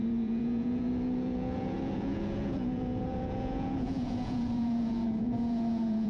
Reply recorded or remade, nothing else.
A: remade